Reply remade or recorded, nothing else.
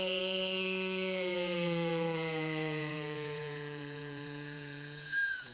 remade